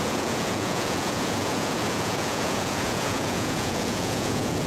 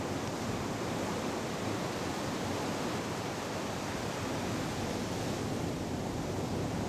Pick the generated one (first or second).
first